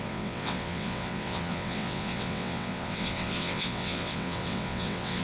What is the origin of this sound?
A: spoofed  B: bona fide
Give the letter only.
A